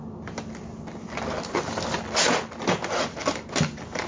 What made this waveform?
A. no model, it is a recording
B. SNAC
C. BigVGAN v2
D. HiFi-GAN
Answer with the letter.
A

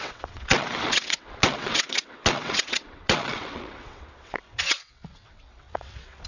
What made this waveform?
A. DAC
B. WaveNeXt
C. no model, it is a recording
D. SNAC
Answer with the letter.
B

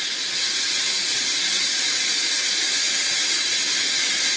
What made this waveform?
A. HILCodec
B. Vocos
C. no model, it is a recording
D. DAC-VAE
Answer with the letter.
C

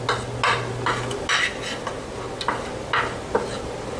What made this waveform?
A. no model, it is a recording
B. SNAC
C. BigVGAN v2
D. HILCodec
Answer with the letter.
A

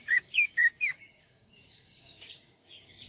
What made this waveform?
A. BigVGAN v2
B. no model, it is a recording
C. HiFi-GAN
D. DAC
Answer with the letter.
D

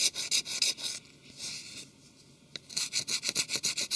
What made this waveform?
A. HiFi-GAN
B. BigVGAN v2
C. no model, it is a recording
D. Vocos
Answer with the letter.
C